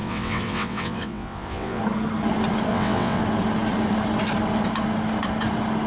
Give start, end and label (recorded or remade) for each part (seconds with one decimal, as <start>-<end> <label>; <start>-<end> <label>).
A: 0.0-1.8 remade; 1.8-2.7 recorded; 2.7-3.2 remade; 3.2-5.9 recorded